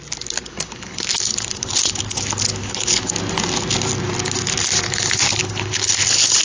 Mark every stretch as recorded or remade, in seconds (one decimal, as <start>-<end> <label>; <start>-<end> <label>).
0.0-0.5 recorded; 0.5-2.0 remade; 2.0-2.5 recorded; 2.5-3.1 remade; 3.1-5.4 recorded; 5.4-6.4 remade